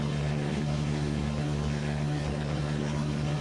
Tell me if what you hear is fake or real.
fake